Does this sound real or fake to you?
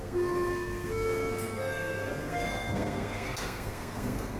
fake